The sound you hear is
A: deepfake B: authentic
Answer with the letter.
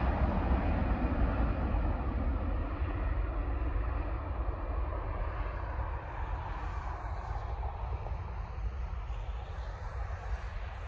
B